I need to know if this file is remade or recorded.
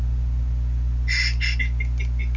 recorded